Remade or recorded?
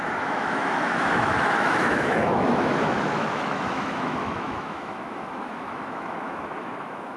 remade